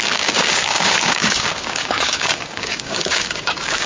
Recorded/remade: remade